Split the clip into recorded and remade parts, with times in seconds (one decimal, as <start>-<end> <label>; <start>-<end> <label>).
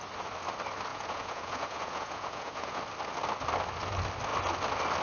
0.0-0.9 recorded; 0.9-2.8 remade; 2.8-5.0 recorded